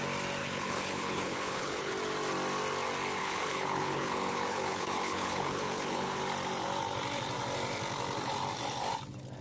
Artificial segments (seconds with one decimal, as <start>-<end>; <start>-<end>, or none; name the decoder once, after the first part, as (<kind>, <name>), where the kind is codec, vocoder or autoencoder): 0.4-1.9 (codec, HILCodec); 3.2-6.2